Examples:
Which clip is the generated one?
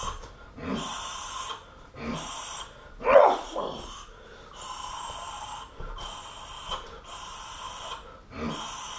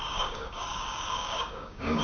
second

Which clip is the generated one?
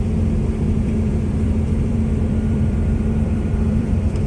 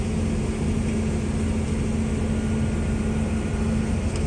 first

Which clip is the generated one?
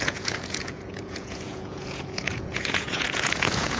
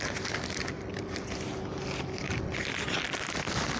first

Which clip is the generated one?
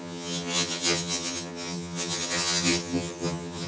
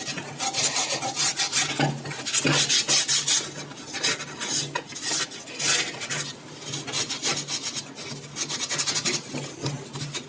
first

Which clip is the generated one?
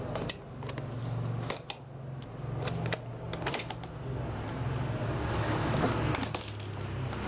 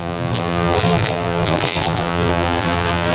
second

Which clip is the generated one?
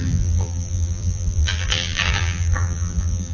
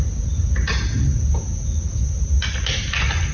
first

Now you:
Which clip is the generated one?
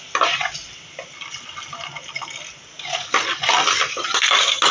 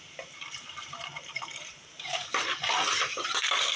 second